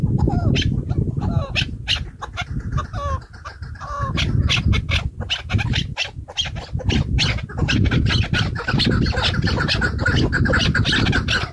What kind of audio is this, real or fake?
real